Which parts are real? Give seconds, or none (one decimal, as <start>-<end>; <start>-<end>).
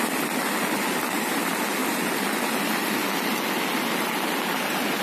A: 0.0-5.0